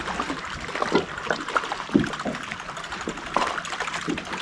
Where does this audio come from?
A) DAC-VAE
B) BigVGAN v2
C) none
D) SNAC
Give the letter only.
C